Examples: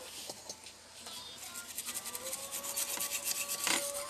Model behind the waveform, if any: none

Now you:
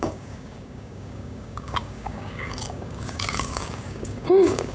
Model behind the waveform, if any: codec, DAC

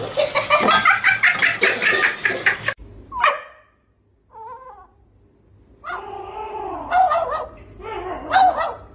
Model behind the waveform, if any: none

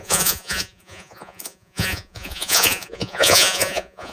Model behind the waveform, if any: vocoder, Vocos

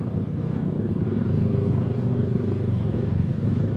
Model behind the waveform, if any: codec, DAC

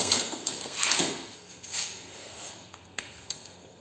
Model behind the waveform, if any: codec, SNAC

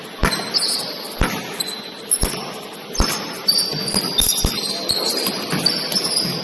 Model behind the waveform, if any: none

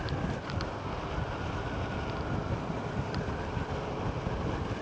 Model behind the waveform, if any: none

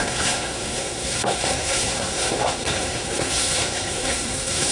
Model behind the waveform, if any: codec, SNAC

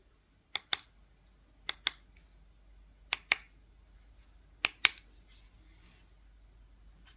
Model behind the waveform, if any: none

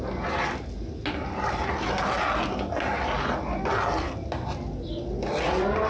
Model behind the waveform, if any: none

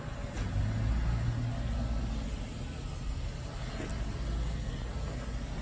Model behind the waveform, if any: none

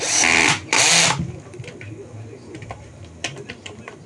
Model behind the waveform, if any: none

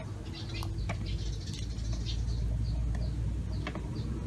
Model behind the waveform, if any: none